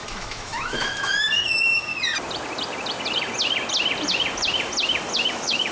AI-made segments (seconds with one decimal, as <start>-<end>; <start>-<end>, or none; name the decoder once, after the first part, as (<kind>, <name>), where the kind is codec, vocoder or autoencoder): 0.0-1.9 (autoencoder, DAC-VAE); 5.3-5.7